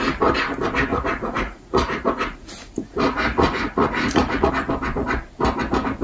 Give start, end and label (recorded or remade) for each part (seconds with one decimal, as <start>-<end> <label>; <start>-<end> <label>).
0.0-0.9 recorded; 0.9-4.5 remade; 4.5-6.0 recorded